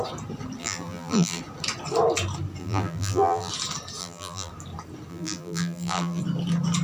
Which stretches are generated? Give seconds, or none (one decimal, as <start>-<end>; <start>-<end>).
0.6-1.4; 2.6-3.5; 4.0-4.5; 5.1-6.2